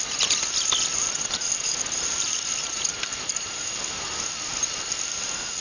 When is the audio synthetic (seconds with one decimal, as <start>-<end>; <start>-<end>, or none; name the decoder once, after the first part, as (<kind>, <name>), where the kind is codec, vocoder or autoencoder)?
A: none